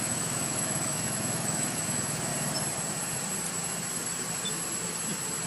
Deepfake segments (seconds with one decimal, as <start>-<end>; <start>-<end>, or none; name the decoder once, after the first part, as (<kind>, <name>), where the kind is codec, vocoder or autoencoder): 0.0-2.3 (autoencoder, DAC-VAE)